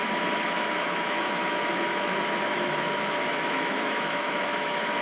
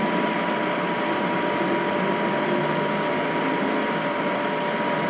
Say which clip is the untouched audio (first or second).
second